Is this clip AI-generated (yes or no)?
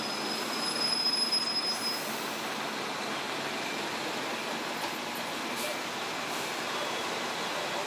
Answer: no